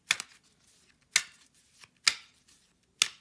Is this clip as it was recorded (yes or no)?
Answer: yes